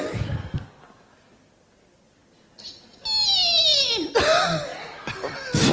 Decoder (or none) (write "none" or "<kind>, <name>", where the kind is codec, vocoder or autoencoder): none